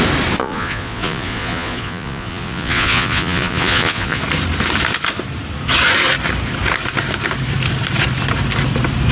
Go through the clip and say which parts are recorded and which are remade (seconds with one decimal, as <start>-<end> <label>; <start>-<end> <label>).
0.0-0.4 recorded; 0.4-4.2 remade; 4.2-9.1 recorded